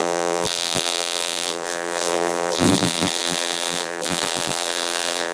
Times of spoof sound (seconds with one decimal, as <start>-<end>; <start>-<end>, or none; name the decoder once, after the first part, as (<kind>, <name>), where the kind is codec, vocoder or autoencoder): 0.0-5.3 (vocoder, BigVGAN v2)